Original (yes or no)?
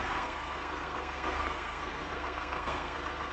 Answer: no